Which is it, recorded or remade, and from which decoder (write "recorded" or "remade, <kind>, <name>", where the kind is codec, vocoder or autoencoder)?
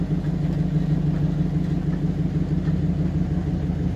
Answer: recorded